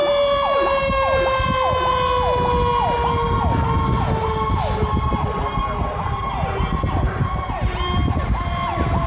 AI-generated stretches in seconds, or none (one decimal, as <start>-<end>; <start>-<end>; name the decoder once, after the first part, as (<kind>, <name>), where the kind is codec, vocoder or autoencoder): 5.6-6.2 (vocoder, BigVGAN v2)